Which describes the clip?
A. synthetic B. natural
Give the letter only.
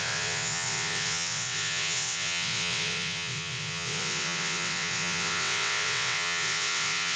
A